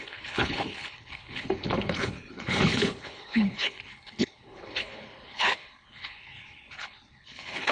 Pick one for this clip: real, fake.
fake